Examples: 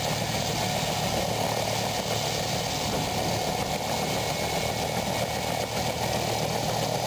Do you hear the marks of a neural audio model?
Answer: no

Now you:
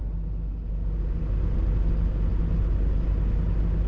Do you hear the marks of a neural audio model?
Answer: no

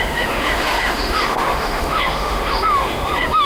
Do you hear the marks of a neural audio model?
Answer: yes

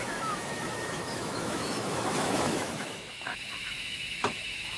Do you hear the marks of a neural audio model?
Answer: yes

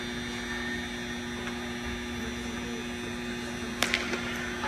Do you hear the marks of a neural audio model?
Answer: no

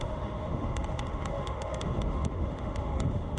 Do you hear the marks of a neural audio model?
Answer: yes